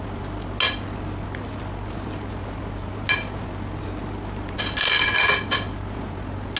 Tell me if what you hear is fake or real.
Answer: real